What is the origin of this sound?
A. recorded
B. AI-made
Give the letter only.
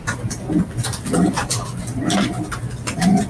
A